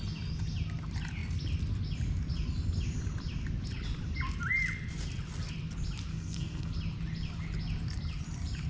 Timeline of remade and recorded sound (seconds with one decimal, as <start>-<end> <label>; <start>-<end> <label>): 0.0-6.1 recorded; 6.1-6.7 remade; 6.7-8.7 recorded